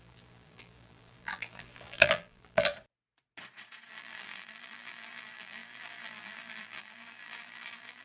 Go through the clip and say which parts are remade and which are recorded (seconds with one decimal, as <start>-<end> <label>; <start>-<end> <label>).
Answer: 0.0-2.7 remade; 2.7-3.9 recorded; 3.9-8.0 remade